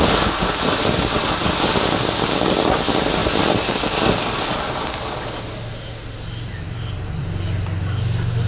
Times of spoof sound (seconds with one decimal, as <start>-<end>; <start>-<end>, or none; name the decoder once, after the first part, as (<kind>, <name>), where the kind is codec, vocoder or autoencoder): none